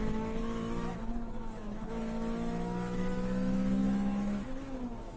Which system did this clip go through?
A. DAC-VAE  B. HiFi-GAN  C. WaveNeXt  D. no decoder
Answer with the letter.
A